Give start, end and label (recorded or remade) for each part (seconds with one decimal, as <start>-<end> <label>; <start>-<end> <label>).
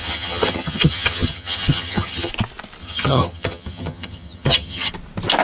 0.0-2.3 remade; 2.3-2.8 recorded; 2.8-4.9 remade; 4.9-5.4 recorded